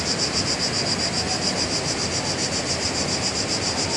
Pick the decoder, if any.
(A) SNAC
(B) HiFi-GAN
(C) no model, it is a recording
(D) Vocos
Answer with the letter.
C